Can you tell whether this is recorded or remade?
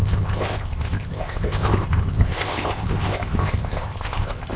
remade